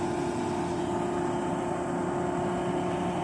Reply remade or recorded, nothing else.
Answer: recorded